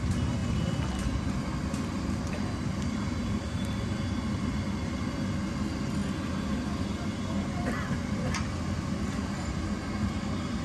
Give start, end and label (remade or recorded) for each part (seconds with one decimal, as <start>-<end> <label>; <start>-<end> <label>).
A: 0.0-10.6 recorded